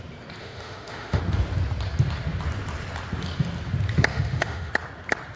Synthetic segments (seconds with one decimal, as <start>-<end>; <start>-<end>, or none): 0.4-1.2; 4.1-4.7